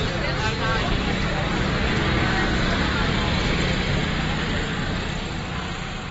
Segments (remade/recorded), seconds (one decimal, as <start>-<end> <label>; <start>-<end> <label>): 0.0-0.7 recorded; 0.7-2.0 remade; 2.0-6.1 recorded